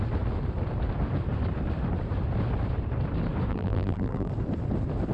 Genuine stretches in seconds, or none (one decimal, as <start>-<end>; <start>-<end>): 0.0-3.5; 4.3-5.1